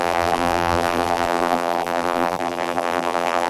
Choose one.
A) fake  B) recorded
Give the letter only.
A